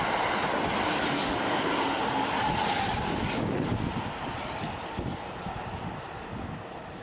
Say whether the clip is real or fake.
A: real